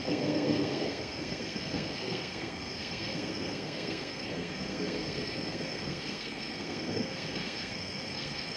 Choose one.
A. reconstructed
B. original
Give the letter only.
A